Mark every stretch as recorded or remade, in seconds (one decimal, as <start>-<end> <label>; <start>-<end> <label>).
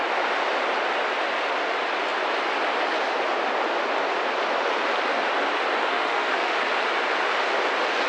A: 0.0-5.9 recorded; 5.9-6.5 remade; 6.5-8.1 recorded